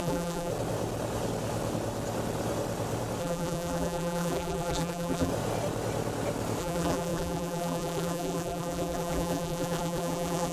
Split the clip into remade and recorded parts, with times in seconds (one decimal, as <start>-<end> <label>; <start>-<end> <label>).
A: 0.0-0.5 remade; 0.5-3.2 recorded; 3.2-5.3 remade; 5.3-6.6 recorded; 6.6-10.5 remade